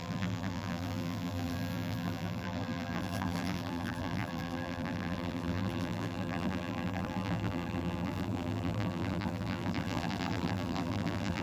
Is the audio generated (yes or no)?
yes